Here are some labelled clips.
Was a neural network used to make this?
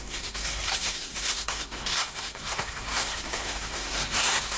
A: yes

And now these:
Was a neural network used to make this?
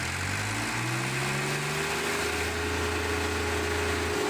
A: no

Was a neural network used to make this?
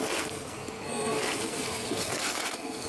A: yes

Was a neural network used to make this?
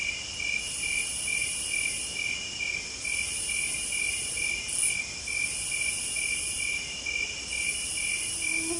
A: no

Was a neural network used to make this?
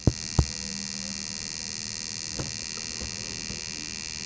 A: no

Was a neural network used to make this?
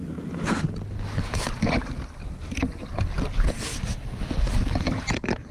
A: no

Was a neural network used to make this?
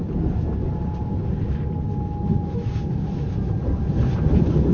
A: no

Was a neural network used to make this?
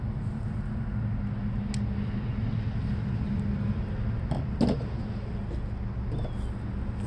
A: no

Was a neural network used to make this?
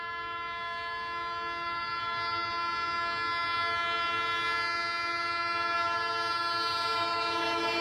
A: no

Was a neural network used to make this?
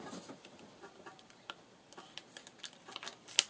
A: no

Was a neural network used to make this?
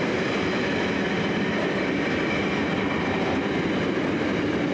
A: no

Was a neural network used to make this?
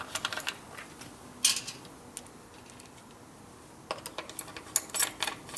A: no